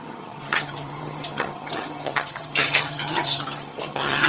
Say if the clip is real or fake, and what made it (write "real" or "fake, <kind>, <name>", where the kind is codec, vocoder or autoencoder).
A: fake, vocoder, HiFi-GAN